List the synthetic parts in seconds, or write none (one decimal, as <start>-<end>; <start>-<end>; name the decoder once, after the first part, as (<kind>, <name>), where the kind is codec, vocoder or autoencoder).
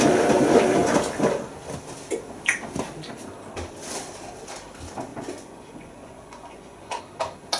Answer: 5.1-7.0 (vocoder, Vocos)